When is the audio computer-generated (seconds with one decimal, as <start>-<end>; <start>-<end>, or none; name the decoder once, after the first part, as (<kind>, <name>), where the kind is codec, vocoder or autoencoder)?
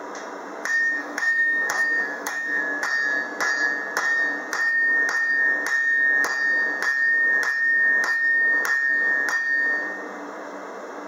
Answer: 1.0-2.6 (autoencoder, DAC-VAE)